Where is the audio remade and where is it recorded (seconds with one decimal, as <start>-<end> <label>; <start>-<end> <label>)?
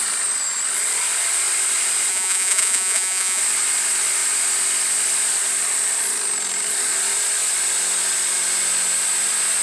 0.0-2.1 recorded; 2.1-3.4 remade; 3.4-9.6 recorded